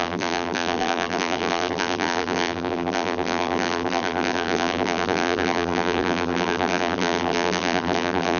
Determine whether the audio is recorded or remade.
remade